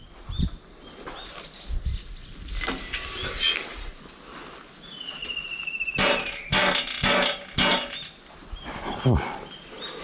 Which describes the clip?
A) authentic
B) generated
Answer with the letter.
A